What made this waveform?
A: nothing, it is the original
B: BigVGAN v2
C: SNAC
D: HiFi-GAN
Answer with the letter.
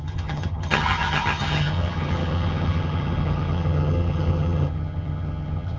D